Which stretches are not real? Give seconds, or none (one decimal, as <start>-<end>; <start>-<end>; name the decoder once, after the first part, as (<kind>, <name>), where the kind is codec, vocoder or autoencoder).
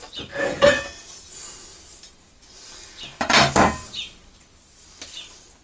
1.7-5.1 (vocoder, BigVGAN v2)